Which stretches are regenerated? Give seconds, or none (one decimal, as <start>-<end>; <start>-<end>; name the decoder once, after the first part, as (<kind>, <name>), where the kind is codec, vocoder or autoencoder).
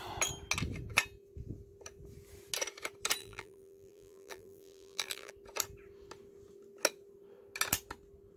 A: 3.2-5.3 (vocoder, BigVGAN v2)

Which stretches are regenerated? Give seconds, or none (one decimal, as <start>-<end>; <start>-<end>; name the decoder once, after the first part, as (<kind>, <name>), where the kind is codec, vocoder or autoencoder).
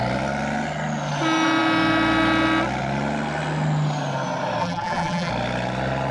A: 4.6-5.3 (vocoder, BigVGAN v2)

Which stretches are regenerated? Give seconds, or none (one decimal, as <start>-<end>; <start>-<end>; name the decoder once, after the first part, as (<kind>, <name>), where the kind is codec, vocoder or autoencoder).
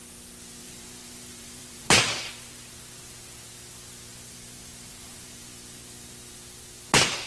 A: 0.6-2.3 (vocoder, BigVGAN v2); 4.1-5.8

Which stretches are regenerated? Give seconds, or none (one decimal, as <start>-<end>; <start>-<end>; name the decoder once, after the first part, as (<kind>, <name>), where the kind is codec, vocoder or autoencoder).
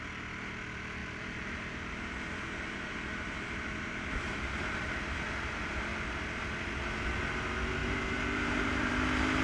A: 1.0-4.5 (vocoder, BigVGAN v2); 7.8-8.9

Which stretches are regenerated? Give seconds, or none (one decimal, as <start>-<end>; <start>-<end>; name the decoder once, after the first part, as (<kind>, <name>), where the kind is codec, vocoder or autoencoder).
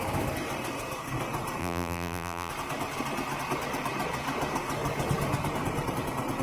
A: 1.6-2.5 (vocoder, BigVGAN v2)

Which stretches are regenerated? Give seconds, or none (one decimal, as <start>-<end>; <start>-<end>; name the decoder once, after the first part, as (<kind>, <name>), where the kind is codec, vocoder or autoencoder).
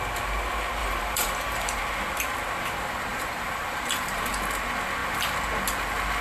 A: 0.8-1.8 (vocoder, BigVGAN v2); 3.1-4.3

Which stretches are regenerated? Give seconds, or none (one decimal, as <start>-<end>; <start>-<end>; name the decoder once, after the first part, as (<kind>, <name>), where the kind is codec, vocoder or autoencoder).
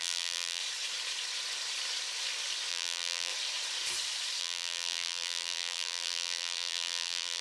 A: 0.0-0.6 (vocoder, BigVGAN v2); 2.7-3.3; 4.4-7.4